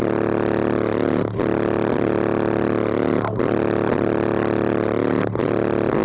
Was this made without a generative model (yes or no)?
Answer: yes